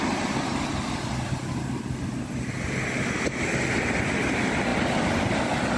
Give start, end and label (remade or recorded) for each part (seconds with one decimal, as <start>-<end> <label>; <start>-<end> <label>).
0.0-5.8 recorded